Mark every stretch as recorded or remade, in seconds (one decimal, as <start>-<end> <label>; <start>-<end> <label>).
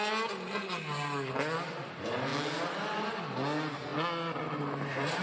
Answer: 0.0-5.2 recorded